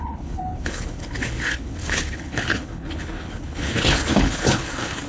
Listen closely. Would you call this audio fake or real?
fake